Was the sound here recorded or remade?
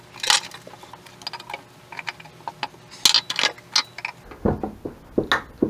recorded